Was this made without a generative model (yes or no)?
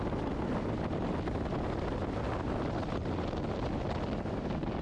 yes